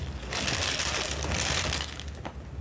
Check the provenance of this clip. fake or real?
real